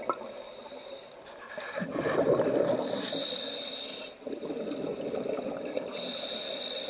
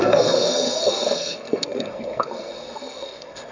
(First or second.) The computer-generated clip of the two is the second